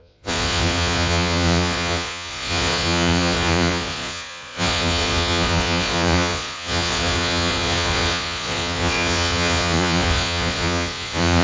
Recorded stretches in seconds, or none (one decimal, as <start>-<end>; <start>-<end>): none